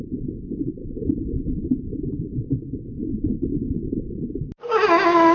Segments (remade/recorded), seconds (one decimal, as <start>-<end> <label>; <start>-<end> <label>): 0.0-5.3 recorded